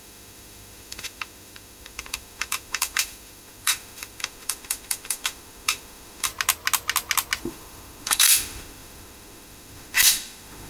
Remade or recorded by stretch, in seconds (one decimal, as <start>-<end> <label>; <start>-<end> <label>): 0.0-6.3 remade; 6.3-7.4 recorded; 7.4-10.7 remade